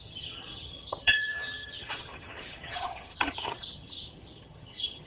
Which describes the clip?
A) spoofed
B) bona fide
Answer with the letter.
A